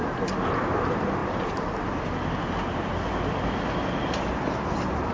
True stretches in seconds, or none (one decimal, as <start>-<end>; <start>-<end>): 0.0-5.1